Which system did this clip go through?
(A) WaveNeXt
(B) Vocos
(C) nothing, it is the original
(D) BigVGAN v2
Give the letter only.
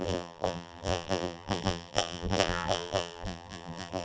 D